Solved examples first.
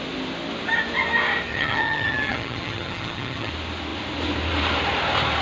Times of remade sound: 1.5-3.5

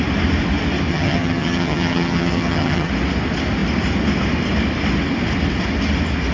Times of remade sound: 0.9-2.9

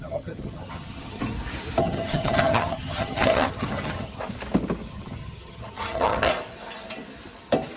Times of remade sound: 0.0-1.2; 1.8-4.2; 4.9-6.3

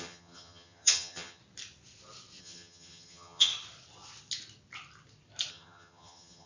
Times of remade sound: 0.0-1.4; 2.4-3.5; 5.5-6.5

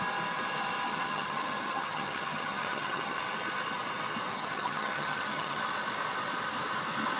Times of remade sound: 0.9-3.2; 4.3-5.6

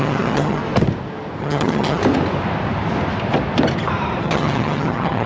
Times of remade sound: 0.0-0.6; 1.4-2.0; 4.2-5.3

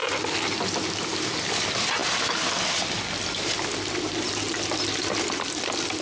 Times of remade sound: none

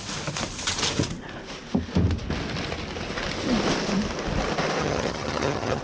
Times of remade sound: 4.8-5.8